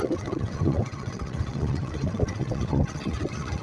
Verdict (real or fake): fake